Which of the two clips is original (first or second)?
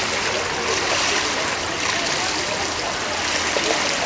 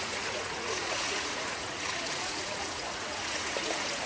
first